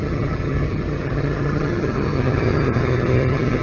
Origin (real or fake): fake